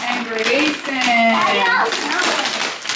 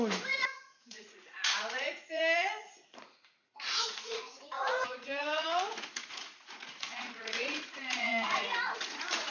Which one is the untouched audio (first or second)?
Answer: first